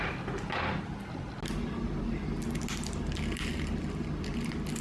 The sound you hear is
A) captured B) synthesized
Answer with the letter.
A